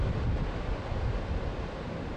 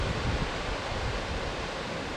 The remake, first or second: second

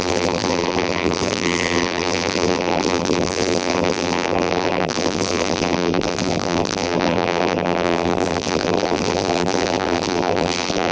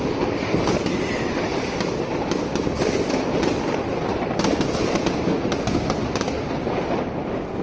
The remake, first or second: first